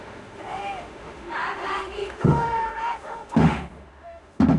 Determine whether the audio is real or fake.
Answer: fake